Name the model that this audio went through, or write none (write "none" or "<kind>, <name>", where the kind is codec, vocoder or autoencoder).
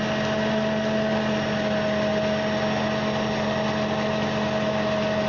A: none